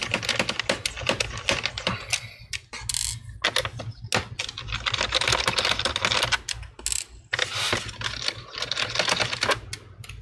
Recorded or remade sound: recorded